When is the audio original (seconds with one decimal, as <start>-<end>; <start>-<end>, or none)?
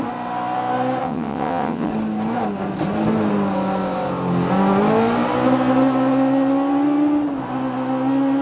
0.0-1.0; 1.9-8.4